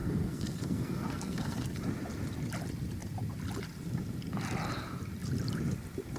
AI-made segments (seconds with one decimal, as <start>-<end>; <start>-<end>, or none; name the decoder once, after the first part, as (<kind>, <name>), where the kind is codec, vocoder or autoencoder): 0.0-1.8 (codec, SNAC)